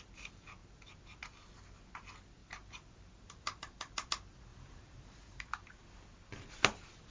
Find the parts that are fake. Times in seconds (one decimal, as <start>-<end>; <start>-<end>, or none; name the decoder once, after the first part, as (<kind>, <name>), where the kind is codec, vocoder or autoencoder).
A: 2.4-4.1 (vocoder, BigVGAN v2); 4.5-5.5